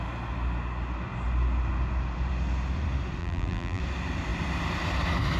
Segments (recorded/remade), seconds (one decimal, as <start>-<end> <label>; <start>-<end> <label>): 0.0-3.2 recorded; 3.2-3.8 remade; 3.8-5.4 recorded